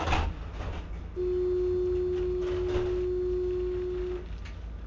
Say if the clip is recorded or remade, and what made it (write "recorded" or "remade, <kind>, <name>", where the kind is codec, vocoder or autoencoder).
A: recorded